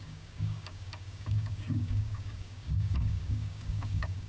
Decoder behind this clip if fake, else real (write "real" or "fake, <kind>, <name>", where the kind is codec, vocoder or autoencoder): fake, codec, DAC